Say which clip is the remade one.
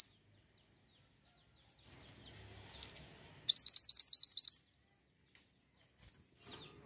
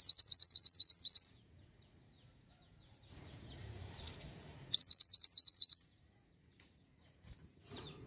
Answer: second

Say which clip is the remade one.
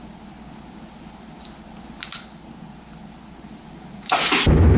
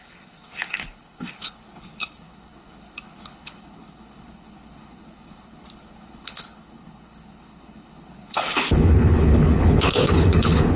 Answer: second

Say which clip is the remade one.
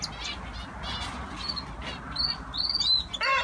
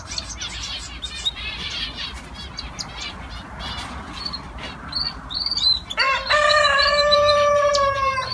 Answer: second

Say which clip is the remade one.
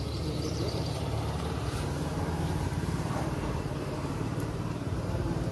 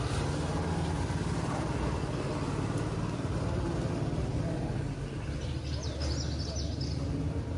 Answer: first